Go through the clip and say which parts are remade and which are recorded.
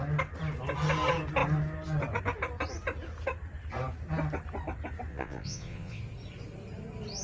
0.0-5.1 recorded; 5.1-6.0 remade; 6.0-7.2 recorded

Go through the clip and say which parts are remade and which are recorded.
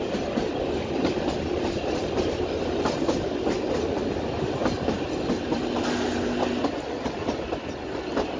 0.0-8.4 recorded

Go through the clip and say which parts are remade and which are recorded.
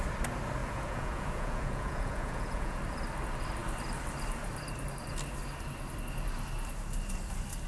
0.0-0.6 recorded; 0.6-2.8 remade; 2.8-7.7 recorded